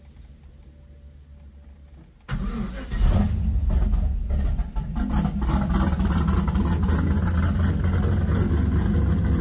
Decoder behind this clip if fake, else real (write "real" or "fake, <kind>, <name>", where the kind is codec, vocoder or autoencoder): real